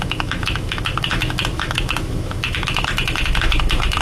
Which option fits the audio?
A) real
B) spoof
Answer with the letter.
B